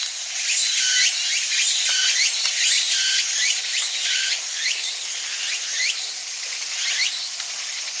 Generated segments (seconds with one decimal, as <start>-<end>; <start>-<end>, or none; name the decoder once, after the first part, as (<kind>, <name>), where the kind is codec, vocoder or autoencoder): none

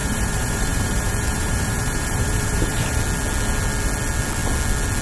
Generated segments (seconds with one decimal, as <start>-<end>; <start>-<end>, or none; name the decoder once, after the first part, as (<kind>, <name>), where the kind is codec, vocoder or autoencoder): 0.0-3.0 (vocoder, BigVGAN v2)

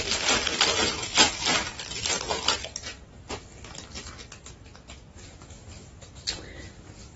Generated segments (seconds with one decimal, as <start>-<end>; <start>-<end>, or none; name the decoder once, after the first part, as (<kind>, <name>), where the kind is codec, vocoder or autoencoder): none

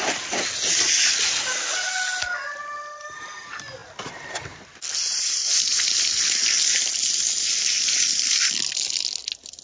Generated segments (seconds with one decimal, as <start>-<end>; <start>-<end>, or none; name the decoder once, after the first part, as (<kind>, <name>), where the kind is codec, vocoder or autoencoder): none

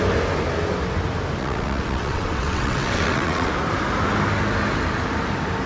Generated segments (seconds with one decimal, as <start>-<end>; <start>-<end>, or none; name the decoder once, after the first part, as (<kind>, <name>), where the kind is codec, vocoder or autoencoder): 1.4-3.5 (vocoder, WaveNeXt)

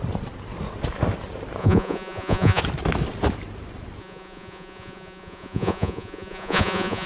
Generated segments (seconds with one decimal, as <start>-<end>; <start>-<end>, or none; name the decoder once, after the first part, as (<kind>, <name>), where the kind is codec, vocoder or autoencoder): 1.6-2.6 (vocoder, Vocos); 4.0-7.1